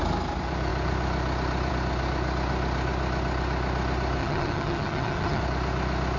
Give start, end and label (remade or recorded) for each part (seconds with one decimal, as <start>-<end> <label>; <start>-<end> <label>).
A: 0.0-4.2 recorded; 4.2-5.4 remade; 5.4-6.2 recorded